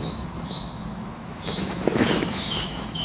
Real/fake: fake